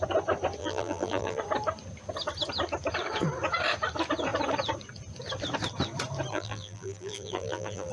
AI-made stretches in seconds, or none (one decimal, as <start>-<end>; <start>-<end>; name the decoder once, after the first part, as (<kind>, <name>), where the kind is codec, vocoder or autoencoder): 0.6-1.4 (vocoder, BigVGAN v2); 6.3-7.9